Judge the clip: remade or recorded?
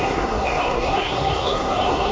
remade